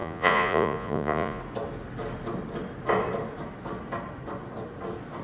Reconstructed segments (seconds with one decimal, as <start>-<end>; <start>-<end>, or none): 0.0-1.4